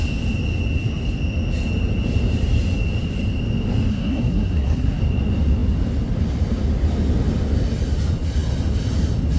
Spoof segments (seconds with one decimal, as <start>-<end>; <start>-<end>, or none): 3.9-5.0

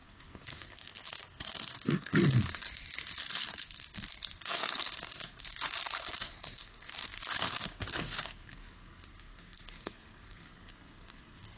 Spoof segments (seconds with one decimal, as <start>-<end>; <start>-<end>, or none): 0.0-11.6

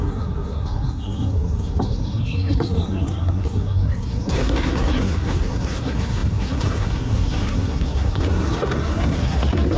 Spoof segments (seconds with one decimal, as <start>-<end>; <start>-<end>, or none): 0.0-9.8

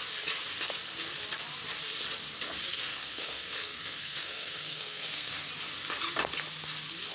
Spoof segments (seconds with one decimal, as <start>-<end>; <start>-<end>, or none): 2.9-5.5

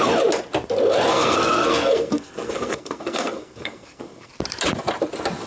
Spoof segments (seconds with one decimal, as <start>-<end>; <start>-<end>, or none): 1.1-4.3

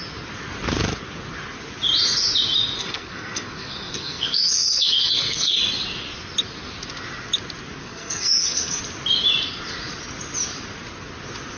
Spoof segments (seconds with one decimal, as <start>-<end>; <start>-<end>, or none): 2.8-5.6; 7.8-8.8

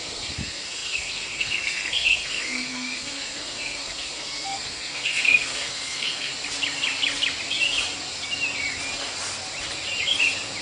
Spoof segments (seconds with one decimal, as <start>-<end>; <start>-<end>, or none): 0.0-6.3

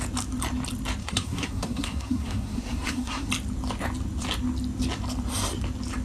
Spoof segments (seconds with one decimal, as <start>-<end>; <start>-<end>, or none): 1.0-3.3